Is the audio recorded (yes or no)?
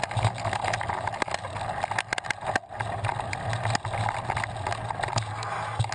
yes